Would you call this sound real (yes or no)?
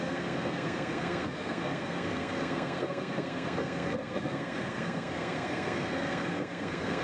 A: no